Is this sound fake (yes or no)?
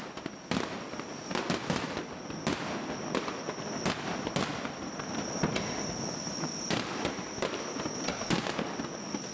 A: no